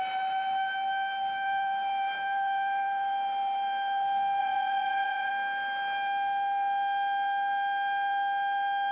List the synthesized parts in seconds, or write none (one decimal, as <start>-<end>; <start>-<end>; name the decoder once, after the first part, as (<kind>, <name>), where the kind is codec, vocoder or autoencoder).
4.4-5.3 (vocoder, Vocos)

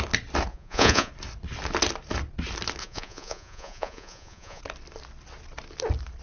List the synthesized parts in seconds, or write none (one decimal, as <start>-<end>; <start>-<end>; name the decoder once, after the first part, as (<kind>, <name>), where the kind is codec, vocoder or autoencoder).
0.5-1.1 (vocoder, Vocos); 2.8-4.6

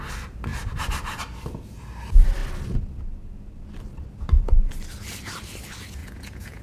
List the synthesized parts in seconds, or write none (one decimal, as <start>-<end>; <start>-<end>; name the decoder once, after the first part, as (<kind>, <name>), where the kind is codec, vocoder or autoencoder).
6.0-6.6 (vocoder, Vocos)

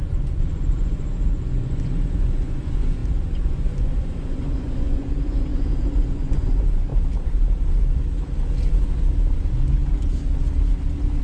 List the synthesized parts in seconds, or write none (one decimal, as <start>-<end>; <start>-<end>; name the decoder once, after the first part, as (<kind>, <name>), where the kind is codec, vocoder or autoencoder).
0.0-6.9 (vocoder, Vocos)

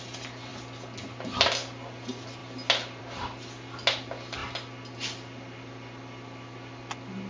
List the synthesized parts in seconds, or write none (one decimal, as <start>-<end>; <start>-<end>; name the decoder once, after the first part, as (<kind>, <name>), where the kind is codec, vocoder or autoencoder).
none

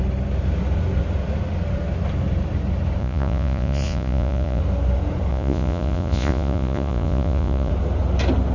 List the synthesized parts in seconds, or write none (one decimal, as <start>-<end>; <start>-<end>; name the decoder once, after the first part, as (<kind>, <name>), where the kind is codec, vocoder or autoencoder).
3.0-4.6 (vocoder, Vocos); 5.3-7.7